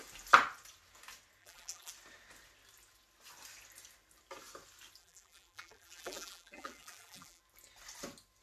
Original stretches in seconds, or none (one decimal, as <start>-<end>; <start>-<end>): 0.0-1.4; 1.9-5.0; 7.4-8.4